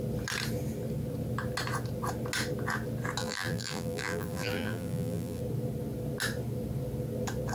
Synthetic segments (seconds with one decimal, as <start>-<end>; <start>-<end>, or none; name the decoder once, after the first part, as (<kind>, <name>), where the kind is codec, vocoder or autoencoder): 3.2-5.4 (vocoder, BigVGAN v2)